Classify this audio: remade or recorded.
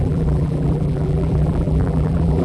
remade